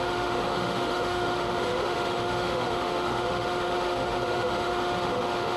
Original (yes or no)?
no